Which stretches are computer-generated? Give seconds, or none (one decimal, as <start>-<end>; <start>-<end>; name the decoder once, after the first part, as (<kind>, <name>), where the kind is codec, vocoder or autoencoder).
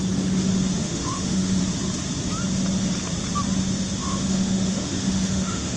0.8-1.6 (autoencoder, DAC-VAE); 4.0-5.8